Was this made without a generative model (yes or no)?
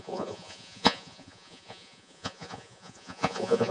no